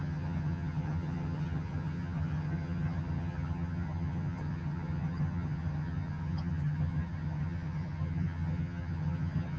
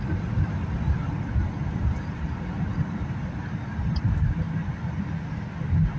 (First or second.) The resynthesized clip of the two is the first